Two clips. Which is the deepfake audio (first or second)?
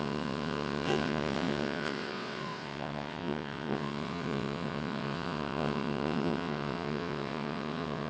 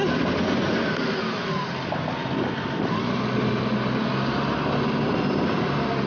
first